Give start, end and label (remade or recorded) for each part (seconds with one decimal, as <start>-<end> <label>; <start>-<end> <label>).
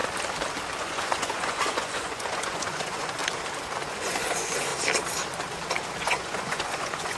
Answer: 0.0-0.8 recorded; 0.8-3.2 remade; 3.2-3.9 recorded; 3.9-4.7 remade; 4.7-6.0 recorded; 6.0-7.2 remade